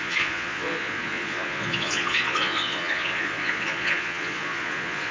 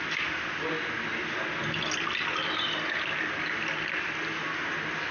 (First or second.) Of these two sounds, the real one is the second